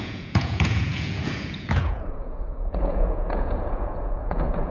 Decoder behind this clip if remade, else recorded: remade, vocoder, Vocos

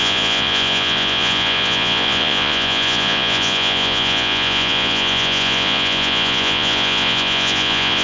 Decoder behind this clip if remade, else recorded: remade, vocoder, Vocos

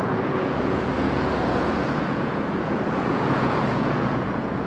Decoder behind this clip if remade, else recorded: remade, vocoder, Vocos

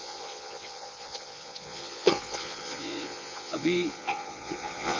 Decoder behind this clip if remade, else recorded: remade, vocoder, Vocos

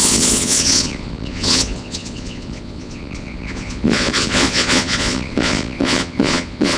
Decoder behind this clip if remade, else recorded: remade, vocoder, Vocos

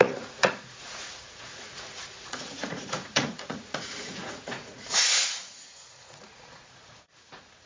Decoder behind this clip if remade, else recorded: remade, vocoder, Vocos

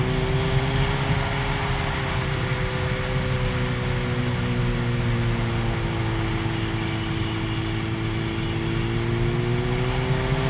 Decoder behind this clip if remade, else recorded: recorded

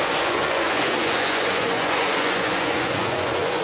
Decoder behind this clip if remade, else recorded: remade, vocoder, Vocos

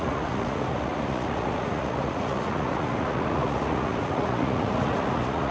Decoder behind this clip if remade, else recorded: remade, vocoder, Vocos